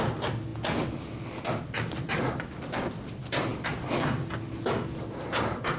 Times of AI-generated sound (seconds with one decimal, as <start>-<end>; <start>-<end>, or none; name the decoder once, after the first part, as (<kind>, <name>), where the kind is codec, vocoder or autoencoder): none